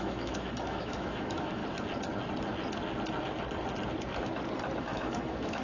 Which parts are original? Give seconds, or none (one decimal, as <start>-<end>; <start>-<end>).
1.6-4.8